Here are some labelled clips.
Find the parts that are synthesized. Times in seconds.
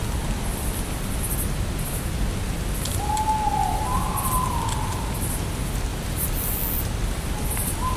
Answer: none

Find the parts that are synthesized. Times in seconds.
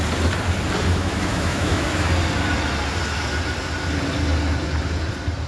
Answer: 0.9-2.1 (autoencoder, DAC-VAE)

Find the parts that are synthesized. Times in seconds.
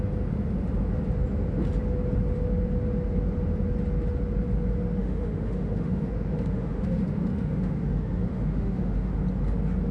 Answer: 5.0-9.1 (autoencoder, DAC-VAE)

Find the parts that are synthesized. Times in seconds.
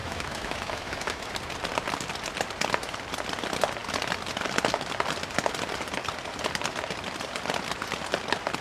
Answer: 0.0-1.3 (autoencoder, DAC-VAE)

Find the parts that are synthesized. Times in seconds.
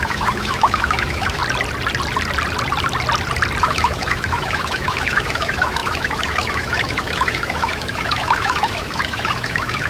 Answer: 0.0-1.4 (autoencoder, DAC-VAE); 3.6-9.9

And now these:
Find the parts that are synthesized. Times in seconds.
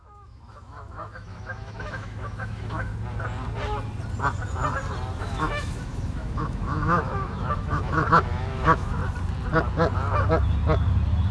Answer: 0.0-2.9 (autoencoder, DAC-VAE); 5.2-9.0